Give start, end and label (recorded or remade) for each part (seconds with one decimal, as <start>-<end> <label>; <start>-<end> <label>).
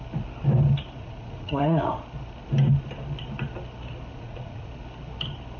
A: 0.0-1.0 recorded; 1.0-1.9 remade; 1.9-4.1 recorded; 4.1-4.7 remade; 4.7-5.6 recorded